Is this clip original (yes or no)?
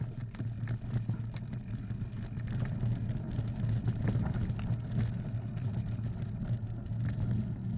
yes